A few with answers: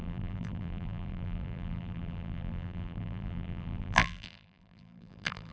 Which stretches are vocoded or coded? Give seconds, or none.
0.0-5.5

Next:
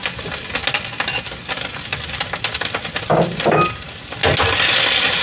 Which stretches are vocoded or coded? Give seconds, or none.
none

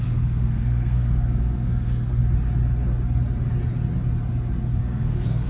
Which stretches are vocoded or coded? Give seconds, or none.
0.0-2.2; 4.8-5.5

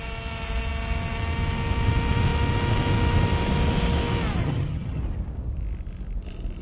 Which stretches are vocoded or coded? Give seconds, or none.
4.4-5.0

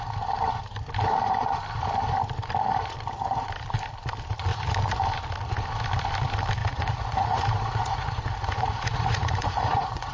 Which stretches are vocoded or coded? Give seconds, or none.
6.6-10.1

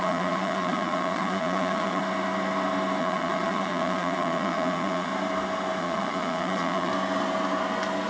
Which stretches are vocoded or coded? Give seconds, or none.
0.0-2.0; 3.0-5.1; 5.8-6.9